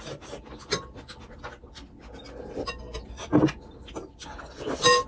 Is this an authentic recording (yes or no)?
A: yes